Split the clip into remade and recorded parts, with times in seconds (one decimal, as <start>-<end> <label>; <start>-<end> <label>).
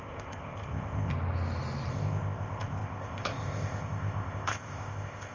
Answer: 0.0-1.1 remade; 1.1-1.9 recorded; 1.9-5.3 remade